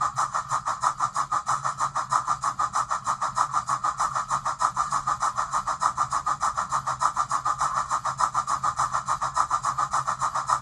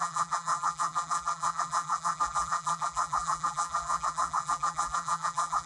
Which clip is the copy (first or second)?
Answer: second